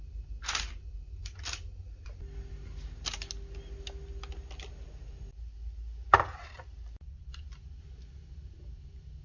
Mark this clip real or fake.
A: real